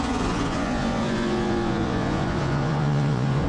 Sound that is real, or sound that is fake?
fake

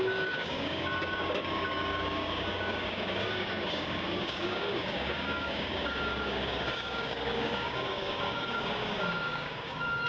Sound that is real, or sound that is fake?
fake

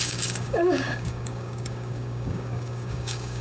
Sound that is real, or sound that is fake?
fake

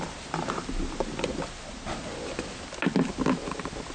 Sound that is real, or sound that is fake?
real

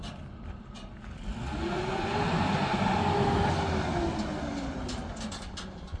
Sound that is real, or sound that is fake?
real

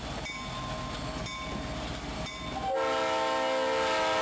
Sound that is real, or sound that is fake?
real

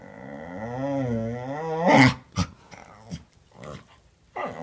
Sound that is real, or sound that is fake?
real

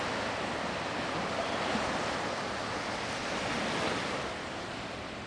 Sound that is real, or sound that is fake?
real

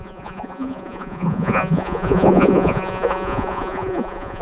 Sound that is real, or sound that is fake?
fake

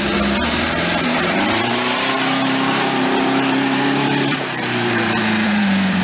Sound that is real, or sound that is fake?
fake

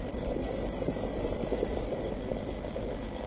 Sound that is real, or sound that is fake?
real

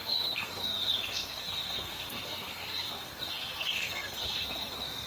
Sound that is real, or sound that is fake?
fake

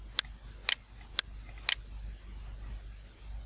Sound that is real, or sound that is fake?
real